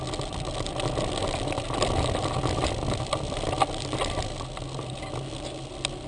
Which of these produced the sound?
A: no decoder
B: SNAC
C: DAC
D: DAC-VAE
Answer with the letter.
A